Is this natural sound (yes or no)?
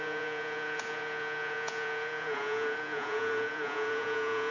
no